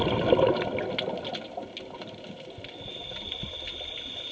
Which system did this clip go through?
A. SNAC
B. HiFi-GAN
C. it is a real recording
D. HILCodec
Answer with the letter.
C